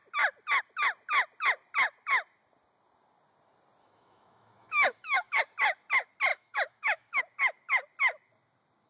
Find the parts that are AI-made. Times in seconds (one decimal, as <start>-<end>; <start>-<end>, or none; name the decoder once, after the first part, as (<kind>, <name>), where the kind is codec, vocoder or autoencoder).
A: 3.8-5.4 (autoencoder, DAC-VAE); 6.3-7.2